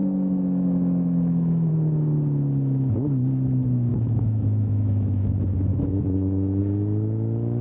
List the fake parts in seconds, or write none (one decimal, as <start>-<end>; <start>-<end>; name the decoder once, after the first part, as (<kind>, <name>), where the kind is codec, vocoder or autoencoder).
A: 0.0-1.7 (autoencoder, DAC-VAE); 3.9-5.3; 5.7-6.6